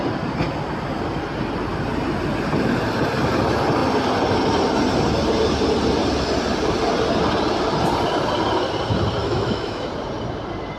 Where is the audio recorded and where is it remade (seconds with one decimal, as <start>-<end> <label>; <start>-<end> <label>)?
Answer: 0.0-9.2 recorded; 9.2-9.9 remade; 9.9-10.8 recorded